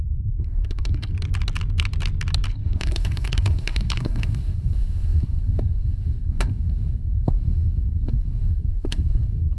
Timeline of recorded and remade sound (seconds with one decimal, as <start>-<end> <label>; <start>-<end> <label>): 0.0-1.1 remade; 1.1-2.5 recorded; 2.5-9.6 remade